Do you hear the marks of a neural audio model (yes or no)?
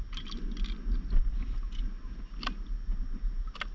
no